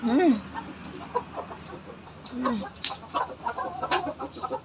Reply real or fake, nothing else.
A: real